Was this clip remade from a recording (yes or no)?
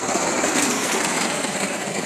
yes